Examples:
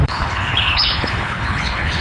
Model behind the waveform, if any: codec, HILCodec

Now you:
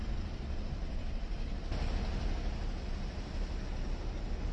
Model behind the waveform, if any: none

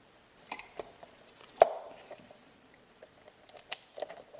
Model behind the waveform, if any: none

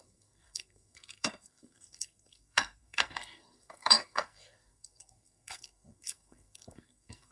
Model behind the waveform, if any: codec, SNAC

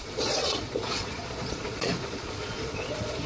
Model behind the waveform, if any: vocoder, Vocos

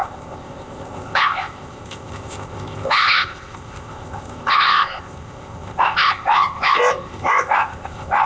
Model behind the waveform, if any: codec, ZipCodec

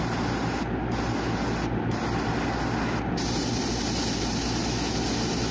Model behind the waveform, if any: none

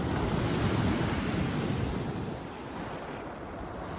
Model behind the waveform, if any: none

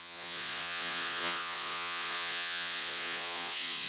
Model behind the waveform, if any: vocoder, Vocos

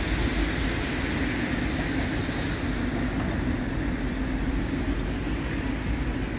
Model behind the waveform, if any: none